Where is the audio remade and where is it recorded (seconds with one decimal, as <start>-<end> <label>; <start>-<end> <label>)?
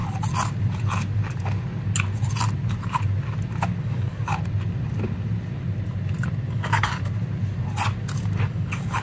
0.0-3.8 recorded; 3.8-4.3 remade; 4.3-6.5 recorded; 6.5-7.0 remade; 7.0-8.5 recorded; 8.5-9.0 remade